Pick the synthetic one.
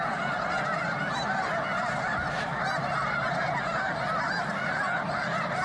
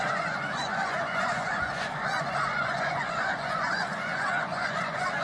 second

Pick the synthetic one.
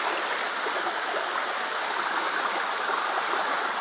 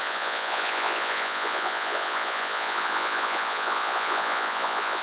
second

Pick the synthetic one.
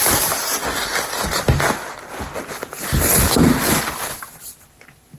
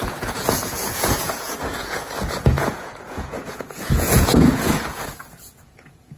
second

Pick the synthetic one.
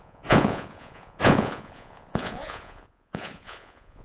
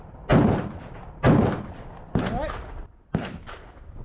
first